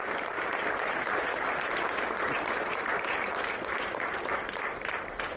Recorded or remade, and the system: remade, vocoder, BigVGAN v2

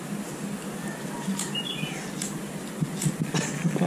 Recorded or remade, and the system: recorded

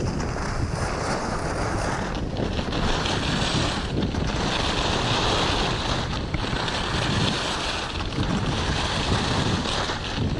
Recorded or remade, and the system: recorded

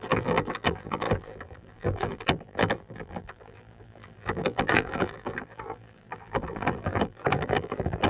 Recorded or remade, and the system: remade, vocoder, BigVGAN v2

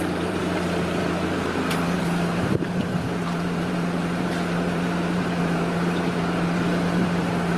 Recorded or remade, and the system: remade, vocoder, BigVGAN v2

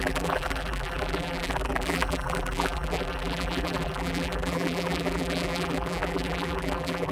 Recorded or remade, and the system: remade, vocoder, BigVGAN v2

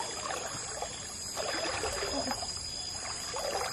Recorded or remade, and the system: remade, vocoder, BigVGAN v2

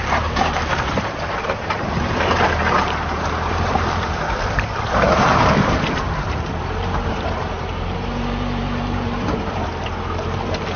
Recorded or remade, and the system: remade, vocoder, BigVGAN v2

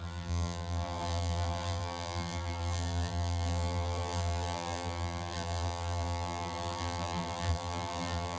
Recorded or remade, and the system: remade, vocoder, BigVGAN v2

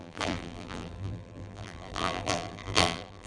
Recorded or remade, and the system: remade, vocoder, BigVGAN v2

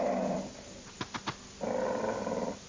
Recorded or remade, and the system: recorded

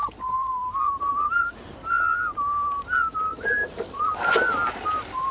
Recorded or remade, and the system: remade, vocoder, BigVGAN v2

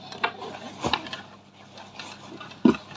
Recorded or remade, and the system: recorded